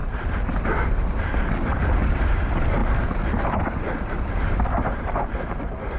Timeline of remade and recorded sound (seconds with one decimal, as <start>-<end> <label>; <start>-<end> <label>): 0.0-1.2 remade; 1.2-2.8 recorded; 2.8-6.0 remade

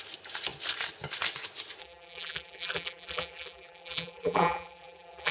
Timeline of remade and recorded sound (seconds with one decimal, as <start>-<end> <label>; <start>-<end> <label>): 0.0-1.8 recorded; 1.8-5.3 remade

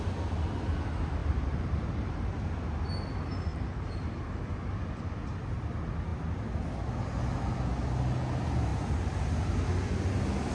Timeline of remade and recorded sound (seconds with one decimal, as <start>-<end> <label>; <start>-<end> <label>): 0.0-1.2 recorded; 1.2-2.3 remade; 2.3-3.5 recorded; 3.5-4.0 remade; 4.0-10.5 recorded

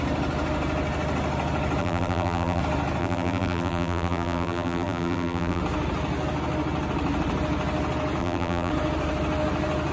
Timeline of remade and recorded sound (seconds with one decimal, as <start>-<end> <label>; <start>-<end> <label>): 0.0-1.8 recorded; 1.8-2.6 remade; 2.6-3.0 recorded; 3.0-5.6 remade; 5.6-8.2 recorded; 8.2-8.7 remade; 8.7-9.9 recorded